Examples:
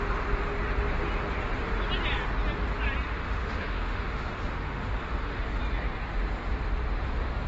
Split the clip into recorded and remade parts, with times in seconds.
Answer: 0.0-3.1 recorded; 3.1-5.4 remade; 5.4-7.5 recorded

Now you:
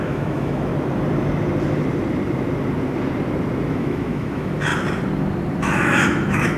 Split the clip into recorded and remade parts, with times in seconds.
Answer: 0.0-0.7 remade; 0.7-3.7 recorded; 3.7-4.7 remade; 4.7-5.6 recorded; 5.6-6.6 remade